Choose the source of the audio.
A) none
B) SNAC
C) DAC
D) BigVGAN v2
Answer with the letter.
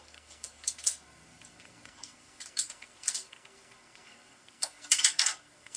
B